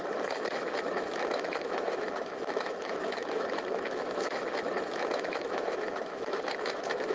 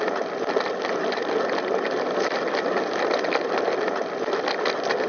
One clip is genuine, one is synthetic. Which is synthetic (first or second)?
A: first